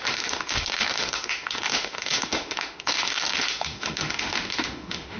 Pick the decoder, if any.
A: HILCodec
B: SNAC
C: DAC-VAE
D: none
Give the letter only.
C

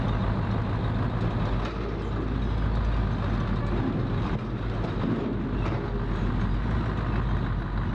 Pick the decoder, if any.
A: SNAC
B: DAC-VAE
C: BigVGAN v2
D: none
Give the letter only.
D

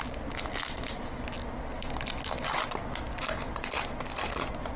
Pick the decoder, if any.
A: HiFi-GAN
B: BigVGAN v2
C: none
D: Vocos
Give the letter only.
C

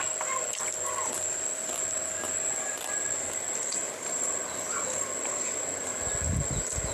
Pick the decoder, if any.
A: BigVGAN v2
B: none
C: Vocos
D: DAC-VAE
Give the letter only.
B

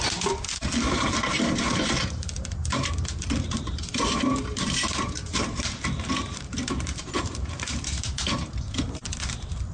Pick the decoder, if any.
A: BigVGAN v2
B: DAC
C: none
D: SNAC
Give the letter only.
A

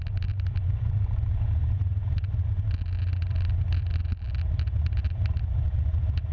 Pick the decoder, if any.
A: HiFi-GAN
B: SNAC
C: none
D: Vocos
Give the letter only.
C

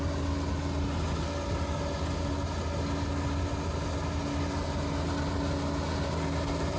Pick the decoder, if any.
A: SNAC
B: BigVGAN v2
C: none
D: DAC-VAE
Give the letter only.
C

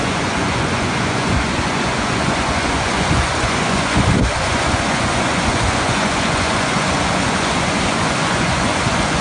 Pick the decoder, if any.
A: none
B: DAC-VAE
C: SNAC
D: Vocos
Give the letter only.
D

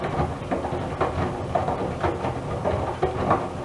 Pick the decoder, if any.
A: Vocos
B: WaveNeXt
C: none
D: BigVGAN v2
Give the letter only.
C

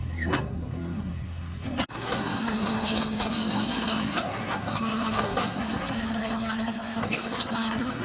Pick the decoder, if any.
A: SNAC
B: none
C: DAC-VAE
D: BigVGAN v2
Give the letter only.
A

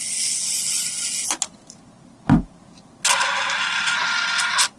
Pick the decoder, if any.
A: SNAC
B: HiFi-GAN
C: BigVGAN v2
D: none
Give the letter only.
D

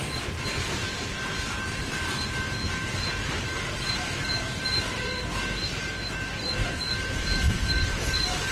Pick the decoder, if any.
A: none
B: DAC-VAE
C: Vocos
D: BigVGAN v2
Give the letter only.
D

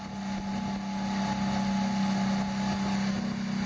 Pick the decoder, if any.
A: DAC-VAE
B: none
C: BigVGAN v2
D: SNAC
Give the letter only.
B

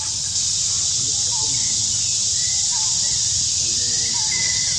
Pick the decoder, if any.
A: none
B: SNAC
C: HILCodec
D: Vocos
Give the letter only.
A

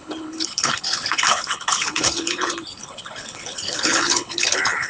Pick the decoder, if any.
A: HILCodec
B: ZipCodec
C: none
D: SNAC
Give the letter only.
A